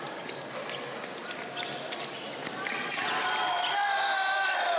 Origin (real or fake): real